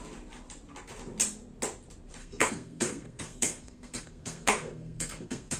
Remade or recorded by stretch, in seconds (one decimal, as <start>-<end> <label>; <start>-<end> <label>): 0.0-2.2 recorded; 2.2-5.6 remade